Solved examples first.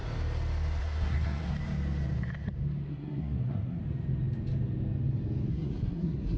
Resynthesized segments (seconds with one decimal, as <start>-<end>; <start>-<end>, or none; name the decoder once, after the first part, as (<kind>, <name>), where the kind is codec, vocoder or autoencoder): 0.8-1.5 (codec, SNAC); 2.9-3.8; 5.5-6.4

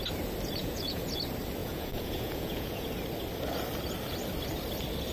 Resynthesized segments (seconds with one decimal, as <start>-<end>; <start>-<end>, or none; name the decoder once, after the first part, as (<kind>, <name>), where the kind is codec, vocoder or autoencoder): 0.6-1.2 (vocoder, Vocos); 1.6-2.9

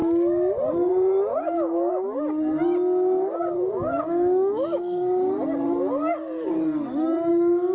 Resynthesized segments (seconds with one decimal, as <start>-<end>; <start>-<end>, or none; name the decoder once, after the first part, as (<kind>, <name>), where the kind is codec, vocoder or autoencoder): 1.3-1.9 (autoencoder, DAC-VAE)

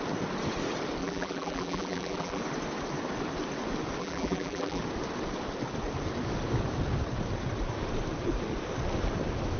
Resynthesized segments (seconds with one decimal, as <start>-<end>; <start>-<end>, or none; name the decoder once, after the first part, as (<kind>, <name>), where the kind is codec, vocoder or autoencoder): 1.0-2.4 (vocoder, BigVGAN v2); 4.0-4.8

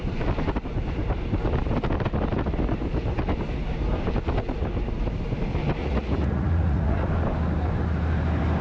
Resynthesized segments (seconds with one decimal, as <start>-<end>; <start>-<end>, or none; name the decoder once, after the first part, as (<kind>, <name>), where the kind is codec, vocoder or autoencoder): 5.8-7.1 (vocoder, Vocos)

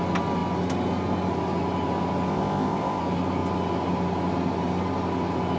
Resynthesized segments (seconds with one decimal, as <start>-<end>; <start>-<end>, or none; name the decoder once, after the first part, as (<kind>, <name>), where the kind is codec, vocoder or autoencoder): 2.3-3.0 (codec, ZipCodec)